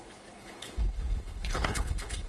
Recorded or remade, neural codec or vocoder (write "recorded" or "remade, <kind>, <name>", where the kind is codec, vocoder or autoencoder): remade, codec, HILCodec